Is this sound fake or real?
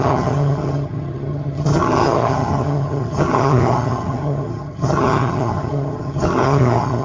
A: fake